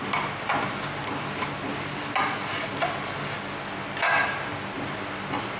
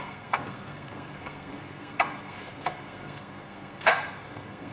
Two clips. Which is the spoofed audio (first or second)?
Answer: second